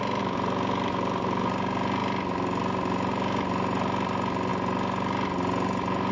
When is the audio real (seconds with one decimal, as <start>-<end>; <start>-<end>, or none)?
0.0-6.1

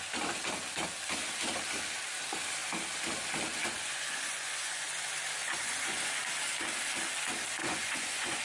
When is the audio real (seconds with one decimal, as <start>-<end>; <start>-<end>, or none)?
0.0-3.6; 5.0-5.4; 6.1-7.6

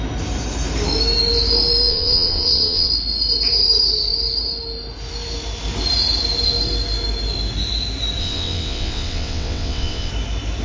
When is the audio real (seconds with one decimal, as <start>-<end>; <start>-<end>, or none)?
0.0-1.9; 2.9-8.2; 10.1-10.6

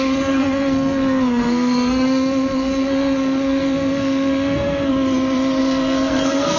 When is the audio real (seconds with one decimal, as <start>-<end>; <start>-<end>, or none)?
4.9-5.6

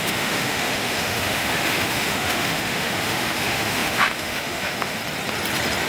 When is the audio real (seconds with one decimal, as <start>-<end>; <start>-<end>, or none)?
5.0-5.9

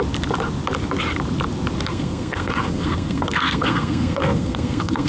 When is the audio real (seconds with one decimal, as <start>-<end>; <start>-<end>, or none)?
0.0-1.9

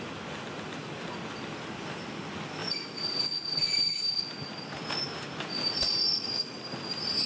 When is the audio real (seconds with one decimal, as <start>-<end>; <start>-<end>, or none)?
0.0-7.3

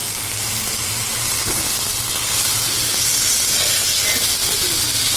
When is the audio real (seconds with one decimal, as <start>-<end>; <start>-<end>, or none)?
0.0-5.2